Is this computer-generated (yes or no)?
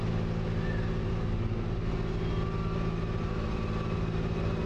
no